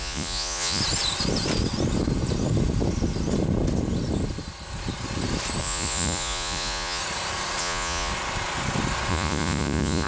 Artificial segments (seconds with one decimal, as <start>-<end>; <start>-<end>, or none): 0.0-0.8; 5.6-7.0; 7.6-8.1; 9.1-10.1